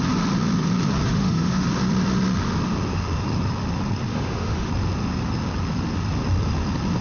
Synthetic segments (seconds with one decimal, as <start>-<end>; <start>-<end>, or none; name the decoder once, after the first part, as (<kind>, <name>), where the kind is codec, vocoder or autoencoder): 1.1-1.7 (autoencoder, DAC-VAE); 4.1-4.7